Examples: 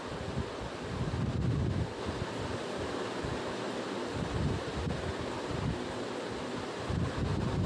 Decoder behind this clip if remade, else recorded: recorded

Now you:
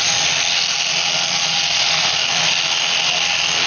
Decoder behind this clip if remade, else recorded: recorded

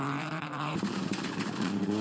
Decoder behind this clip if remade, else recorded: remade, vocoder, BigVGAN v2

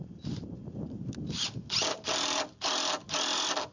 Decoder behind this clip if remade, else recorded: recorded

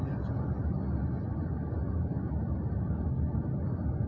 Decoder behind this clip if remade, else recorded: recorded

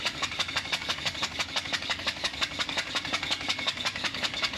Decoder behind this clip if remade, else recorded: remade, codec, DAC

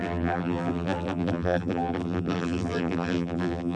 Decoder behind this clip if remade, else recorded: remade, vocoder, BigVGAN v2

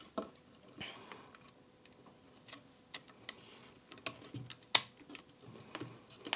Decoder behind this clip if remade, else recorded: recorded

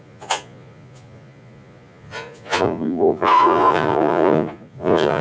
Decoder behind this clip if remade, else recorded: remade, vocoder, Vocos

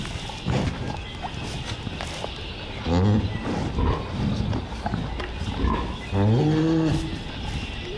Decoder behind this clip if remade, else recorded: recorded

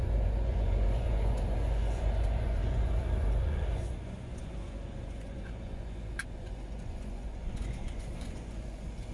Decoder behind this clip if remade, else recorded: remade, vocoder, Vocos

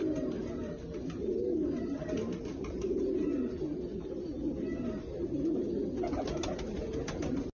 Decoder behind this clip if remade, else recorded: recorded